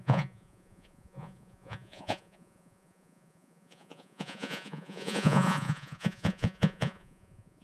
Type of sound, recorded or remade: remade